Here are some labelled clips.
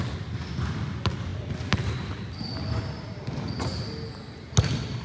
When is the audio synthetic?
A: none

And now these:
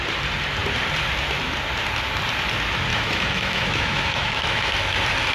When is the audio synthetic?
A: 2.9-4.7

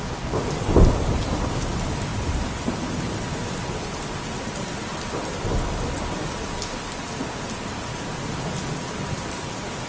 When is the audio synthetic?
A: none